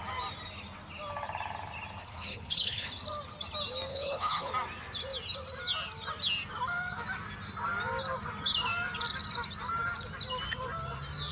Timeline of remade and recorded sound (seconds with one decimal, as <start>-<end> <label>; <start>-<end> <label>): 0.0-2.0 recorded; 2.0-2.9 remade; 2.9-3.9 recorded; 3.9-4.5 remade; 4.5-11.3 recorded